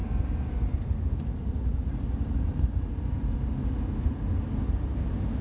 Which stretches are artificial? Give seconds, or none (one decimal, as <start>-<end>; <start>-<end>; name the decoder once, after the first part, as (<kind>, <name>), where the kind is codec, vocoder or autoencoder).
none